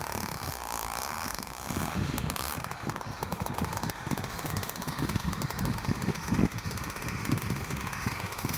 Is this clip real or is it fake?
fake